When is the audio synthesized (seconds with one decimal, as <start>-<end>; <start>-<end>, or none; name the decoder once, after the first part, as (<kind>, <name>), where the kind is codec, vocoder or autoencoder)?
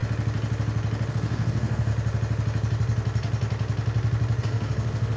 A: 1.1-1.9 (codec, SNAC); 4.4-5.2